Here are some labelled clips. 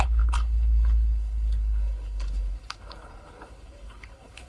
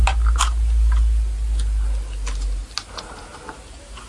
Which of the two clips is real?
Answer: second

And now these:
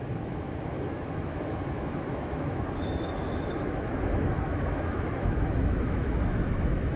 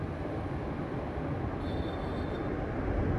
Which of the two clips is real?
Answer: second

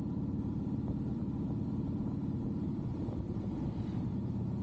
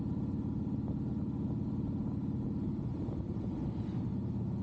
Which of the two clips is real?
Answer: second